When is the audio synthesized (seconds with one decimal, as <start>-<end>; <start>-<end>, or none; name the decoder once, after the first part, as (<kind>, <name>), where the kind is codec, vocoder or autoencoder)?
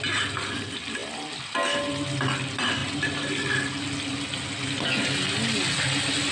none